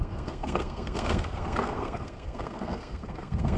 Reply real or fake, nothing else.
fake